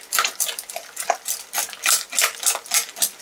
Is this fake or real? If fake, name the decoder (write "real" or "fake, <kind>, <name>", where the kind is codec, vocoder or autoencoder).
real